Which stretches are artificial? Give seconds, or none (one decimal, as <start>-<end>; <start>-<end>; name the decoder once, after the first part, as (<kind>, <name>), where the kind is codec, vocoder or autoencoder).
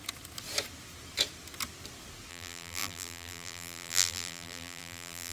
2.3-5.3 (vocoder, BigVGAN v2)